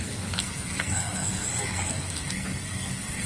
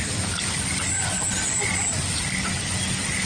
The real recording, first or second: second